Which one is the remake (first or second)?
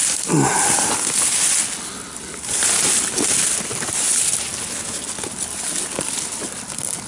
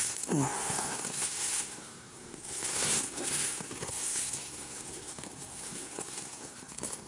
second